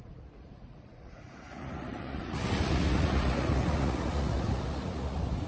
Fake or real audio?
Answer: fake